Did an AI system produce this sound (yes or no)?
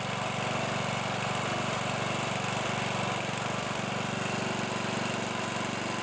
no